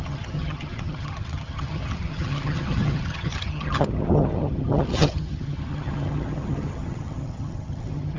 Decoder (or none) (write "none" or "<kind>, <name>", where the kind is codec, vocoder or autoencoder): vocoder, HiFi-GAN